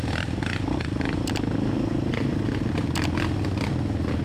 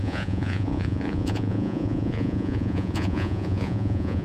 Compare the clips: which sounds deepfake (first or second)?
second